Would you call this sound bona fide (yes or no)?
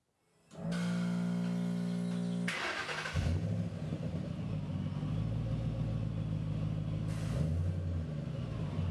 yes